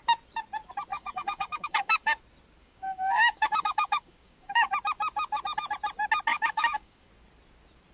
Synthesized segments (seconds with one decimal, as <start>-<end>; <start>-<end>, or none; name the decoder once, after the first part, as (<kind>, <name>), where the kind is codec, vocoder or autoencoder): 0.9-2.2 (codec, DAC); 2.6-4.7; 6.3-7.1